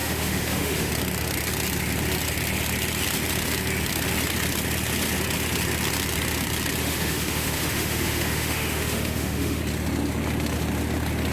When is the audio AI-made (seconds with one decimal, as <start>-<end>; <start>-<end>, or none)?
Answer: 0.0-0.9; 6.8-9.6